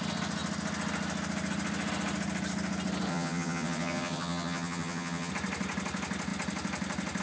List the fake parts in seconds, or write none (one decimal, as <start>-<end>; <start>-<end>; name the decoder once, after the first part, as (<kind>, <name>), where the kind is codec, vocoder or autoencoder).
3.1-5.3 (vocoder, HiFi-GAN)